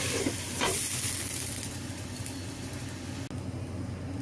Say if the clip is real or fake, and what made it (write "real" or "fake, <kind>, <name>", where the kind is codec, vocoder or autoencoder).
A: real